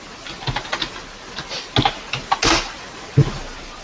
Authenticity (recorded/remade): recorded